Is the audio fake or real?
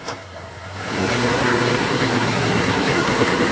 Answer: fake